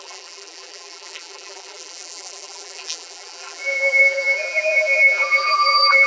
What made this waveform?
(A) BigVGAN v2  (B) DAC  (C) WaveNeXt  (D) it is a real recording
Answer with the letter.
A